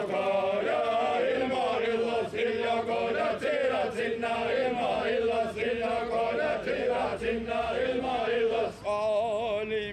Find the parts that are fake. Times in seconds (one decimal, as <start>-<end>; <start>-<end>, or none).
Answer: 1.9-2.8; 7.1-8.0